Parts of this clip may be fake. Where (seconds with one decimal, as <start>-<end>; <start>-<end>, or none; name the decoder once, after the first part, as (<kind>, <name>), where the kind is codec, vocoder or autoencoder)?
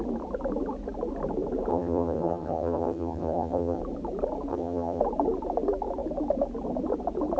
1.7-3.8 (vocoder, HiFi-GAN); 4.5-5.0